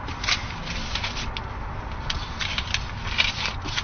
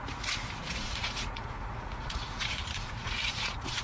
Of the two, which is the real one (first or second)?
first